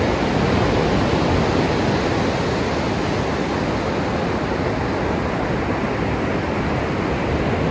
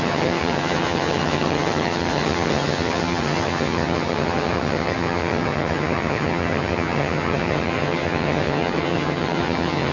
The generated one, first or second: second